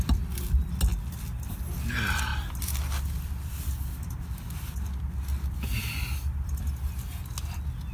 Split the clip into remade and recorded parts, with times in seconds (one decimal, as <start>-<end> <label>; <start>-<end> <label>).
0.0-7.9 recorded